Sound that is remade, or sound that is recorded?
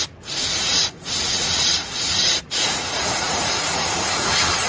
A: remade